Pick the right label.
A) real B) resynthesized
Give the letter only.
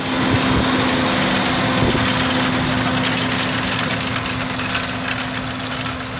A